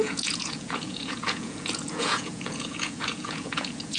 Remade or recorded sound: remade